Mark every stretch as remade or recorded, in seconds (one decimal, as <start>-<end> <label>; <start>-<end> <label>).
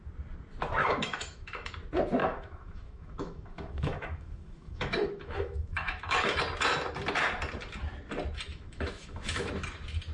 0.0-0.8 recorded; 0.8-1.7 remade; 1.7-2.2 recorded; 2.2-6.4 remade; 6.4-8.5 recorded; 8.5-9.5 remade; 9.5-10.1 recorded